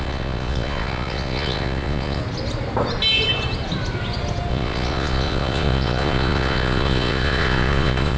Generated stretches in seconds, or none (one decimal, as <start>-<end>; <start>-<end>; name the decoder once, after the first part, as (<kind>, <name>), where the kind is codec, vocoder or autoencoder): 0.0-2.2 (vocoder, Vocos); 4.5-8.2